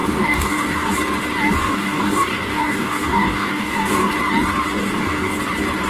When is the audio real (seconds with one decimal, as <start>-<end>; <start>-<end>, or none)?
0.9-1.6; 4.1-4.8; 5.4-5.9